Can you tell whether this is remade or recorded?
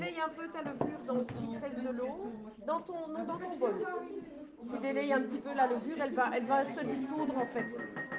recorded